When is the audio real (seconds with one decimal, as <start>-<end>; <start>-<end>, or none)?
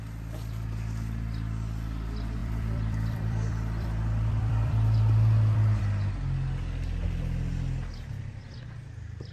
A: 0.0-2.4; 5.8-9.3